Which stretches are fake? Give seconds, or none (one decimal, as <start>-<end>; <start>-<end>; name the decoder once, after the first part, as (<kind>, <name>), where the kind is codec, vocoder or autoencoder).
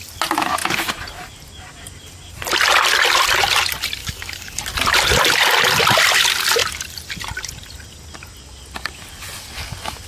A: 4.0-4.6 (codec, DAC)